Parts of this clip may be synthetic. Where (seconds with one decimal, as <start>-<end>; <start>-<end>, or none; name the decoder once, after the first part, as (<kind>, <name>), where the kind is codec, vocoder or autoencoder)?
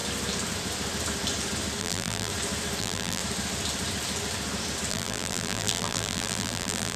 1.8-2.3 (vocoder, BigVGAN v2); 2.8-3.2; 4.9-7.0